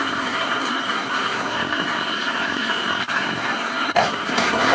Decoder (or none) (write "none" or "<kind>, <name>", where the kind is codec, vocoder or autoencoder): codec, SNAC